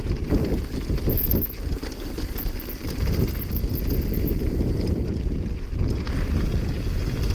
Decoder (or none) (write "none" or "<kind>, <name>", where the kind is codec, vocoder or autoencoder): none